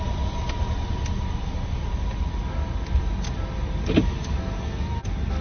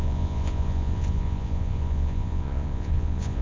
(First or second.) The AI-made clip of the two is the second